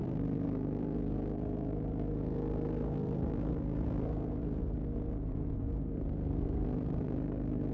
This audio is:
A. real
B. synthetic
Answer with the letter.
B